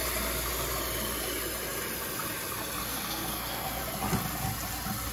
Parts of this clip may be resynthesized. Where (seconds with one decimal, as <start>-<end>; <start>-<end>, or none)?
2.8-3.8